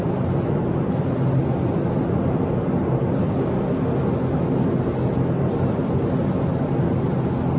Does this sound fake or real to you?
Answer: real